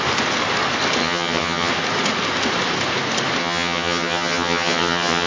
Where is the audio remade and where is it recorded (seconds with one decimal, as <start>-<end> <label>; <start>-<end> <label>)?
0.0-1.0 recorded; 1.0-1.7 remade; 1.7-3.4 recorded; 3.4-5.3 remade